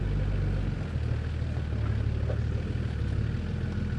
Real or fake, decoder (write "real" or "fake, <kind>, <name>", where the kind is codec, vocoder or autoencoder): real